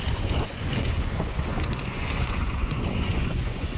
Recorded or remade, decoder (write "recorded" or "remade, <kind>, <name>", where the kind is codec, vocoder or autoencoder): remade, vocoder, Vocos